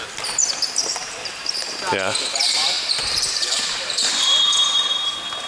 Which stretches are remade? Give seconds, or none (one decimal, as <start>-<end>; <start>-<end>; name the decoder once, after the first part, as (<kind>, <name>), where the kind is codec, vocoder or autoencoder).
1.0-1.8 (vocoder, BigVGAN v2); 2.2-4.1